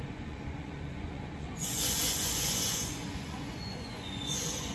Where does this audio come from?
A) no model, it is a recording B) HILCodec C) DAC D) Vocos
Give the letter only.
D